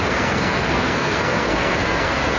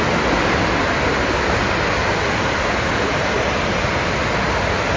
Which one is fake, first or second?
first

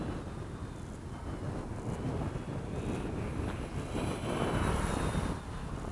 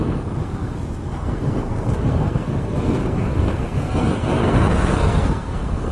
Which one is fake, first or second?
second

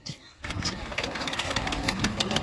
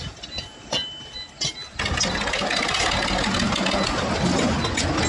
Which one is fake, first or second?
first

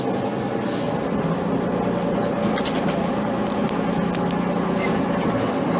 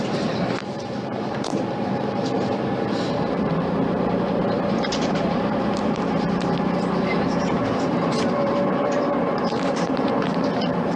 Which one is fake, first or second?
second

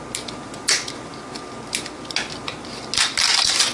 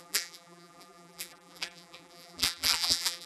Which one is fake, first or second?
second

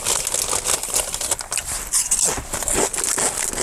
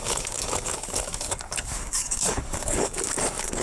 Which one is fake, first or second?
second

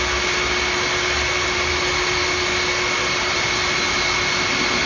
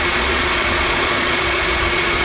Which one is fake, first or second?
second